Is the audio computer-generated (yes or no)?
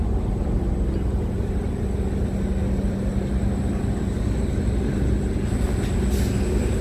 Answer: no